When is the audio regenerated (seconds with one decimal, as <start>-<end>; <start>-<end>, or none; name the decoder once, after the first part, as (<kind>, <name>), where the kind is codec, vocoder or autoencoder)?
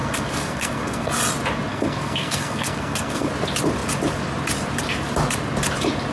0.0-1.2 (codec, SNAC); 1.7-3.3